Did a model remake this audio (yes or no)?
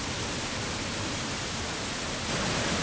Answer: no